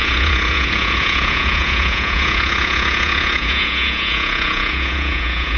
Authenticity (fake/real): fake